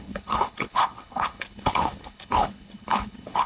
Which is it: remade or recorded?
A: remade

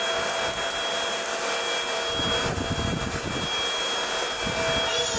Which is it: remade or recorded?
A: recorded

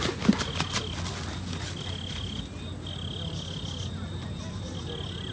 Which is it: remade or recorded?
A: recorded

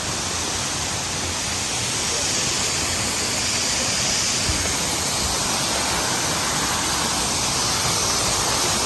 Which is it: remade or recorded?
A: recorded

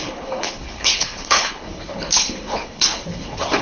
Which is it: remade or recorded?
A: remade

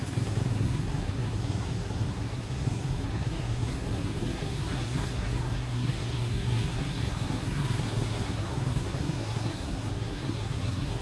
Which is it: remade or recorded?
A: remade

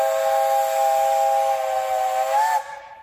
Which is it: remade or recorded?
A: recorded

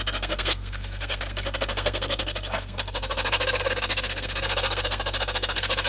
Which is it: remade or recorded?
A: remade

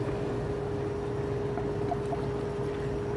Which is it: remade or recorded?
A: recorded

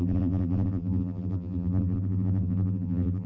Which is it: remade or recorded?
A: remade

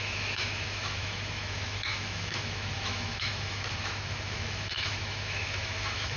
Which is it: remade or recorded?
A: remade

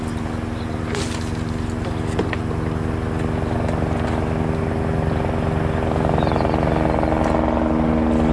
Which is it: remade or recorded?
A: recorded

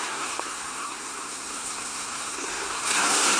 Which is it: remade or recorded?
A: remade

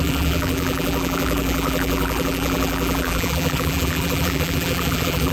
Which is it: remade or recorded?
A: remade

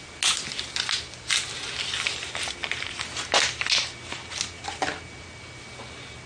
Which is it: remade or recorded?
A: recorded